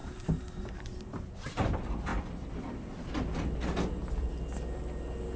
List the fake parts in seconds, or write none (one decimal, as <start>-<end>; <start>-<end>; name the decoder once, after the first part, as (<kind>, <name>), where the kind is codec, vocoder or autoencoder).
0.0-1.6 (vocoder, BigVGAN v2)